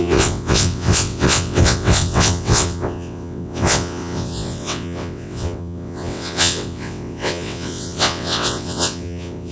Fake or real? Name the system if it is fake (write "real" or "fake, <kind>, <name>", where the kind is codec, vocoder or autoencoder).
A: fake, vocoder, WaveNeXt